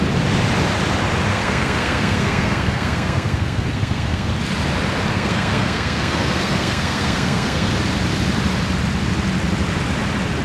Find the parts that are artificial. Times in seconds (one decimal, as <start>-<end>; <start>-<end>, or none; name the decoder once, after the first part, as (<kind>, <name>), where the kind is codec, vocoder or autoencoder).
1.3-4.3 (codec, SNAC); 5.1-7.7